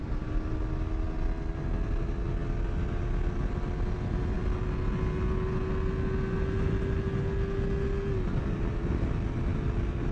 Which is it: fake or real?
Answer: real